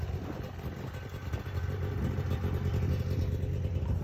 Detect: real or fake real